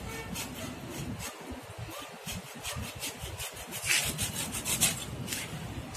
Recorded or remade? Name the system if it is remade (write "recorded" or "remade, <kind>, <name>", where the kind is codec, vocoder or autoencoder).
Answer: recorded